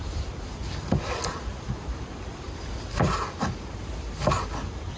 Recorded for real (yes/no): yes